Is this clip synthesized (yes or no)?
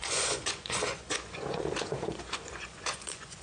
yes